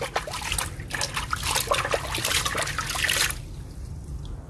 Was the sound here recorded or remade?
recorded